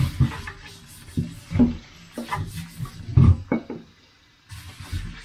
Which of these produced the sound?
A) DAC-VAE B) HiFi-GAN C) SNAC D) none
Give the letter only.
D